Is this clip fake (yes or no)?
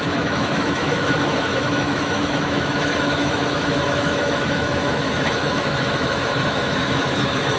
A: yes